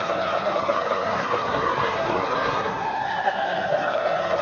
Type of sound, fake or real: fake